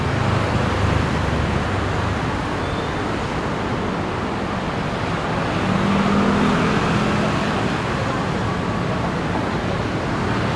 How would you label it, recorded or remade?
recorded